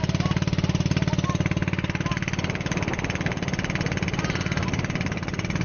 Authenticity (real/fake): real